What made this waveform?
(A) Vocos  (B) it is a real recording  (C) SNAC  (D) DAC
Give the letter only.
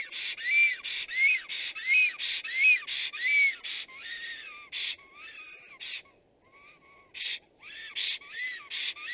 B